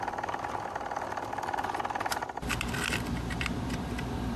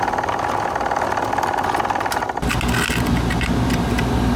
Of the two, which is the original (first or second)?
second